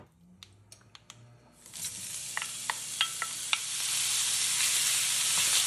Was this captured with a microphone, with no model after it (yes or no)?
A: yes